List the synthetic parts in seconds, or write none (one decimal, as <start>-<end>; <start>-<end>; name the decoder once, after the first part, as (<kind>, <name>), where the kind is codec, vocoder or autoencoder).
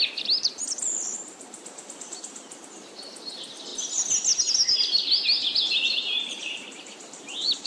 0.0-3.7 (vocoder, BigVGAN v2); 5.8-7.7